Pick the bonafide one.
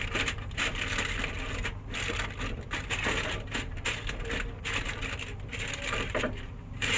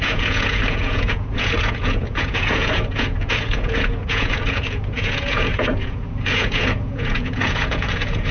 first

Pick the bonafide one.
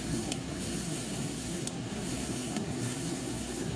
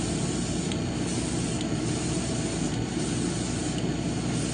second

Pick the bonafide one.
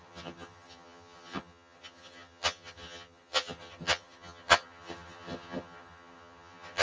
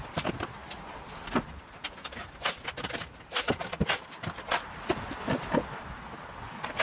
second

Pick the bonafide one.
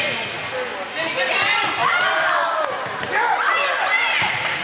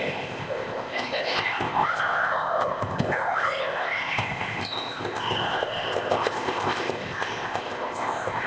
first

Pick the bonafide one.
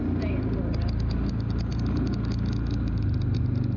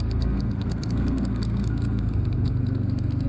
first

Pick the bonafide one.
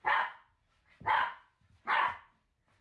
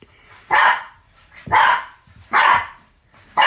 first